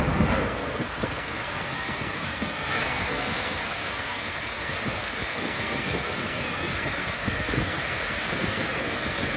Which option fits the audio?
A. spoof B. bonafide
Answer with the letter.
A